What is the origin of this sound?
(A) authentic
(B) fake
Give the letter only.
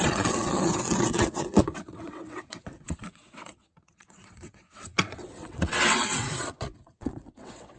B